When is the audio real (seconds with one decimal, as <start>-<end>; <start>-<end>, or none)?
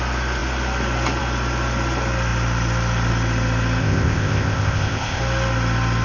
0.0-3.8; 5.2-6.0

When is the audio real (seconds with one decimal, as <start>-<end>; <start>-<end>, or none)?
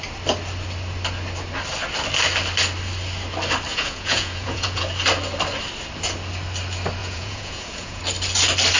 0.0-3.7; 4.8-7.0; 8.0-8.8